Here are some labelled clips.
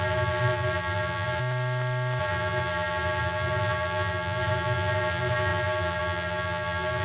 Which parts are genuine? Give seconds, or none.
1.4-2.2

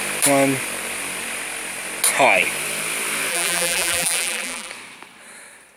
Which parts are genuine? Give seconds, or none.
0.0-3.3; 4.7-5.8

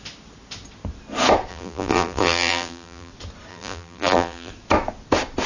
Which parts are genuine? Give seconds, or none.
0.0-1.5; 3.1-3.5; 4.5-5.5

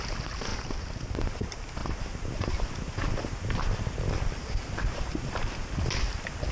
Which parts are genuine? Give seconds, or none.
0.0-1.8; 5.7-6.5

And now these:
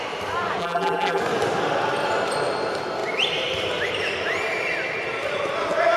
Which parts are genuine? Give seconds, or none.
0.0-0.6; 1.2-6.0